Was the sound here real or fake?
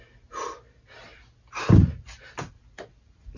real